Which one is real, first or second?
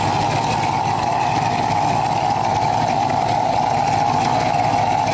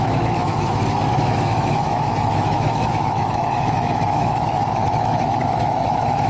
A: first